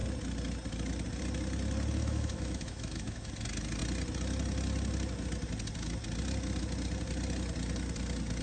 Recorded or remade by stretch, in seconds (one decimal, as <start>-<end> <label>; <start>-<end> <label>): 0.0-2.0 recorded; 2.0-3.3 remade; 3.3-8.4 recorded